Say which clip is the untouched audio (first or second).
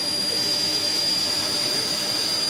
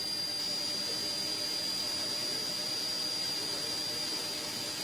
second